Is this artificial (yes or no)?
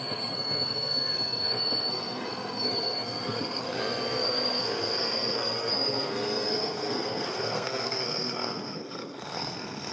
yes